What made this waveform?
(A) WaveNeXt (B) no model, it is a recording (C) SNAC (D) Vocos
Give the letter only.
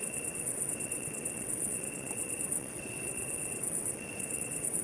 A